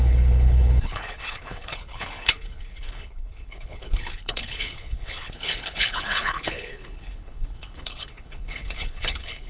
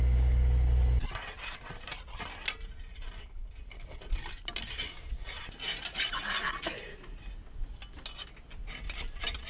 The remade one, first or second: first